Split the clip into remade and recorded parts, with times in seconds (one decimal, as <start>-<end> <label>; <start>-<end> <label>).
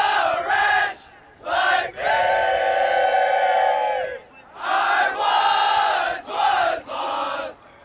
0.0-7.8 recorded